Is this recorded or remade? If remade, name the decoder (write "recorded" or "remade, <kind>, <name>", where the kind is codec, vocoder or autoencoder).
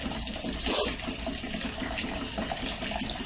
recorded